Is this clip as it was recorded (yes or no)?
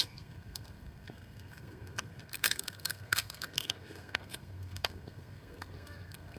no